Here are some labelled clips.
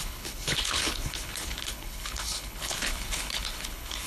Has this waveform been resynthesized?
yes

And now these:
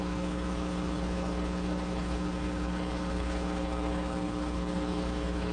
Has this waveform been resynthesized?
yes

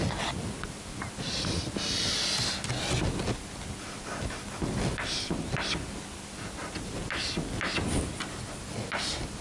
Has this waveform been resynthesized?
no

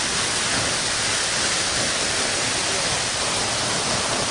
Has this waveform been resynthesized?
no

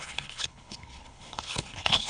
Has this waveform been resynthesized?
yes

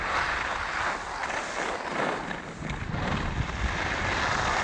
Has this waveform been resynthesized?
no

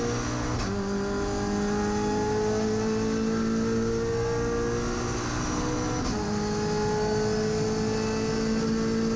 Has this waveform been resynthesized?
no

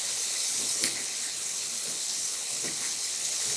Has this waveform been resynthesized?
yes